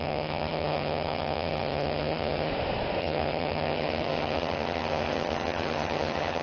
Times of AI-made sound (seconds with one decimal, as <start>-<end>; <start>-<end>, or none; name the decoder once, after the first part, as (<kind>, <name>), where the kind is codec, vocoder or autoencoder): 0.0-2.5 (vocoder, HiFi-GAN); 3.0-6.4